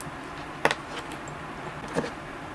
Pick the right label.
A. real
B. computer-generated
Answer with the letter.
A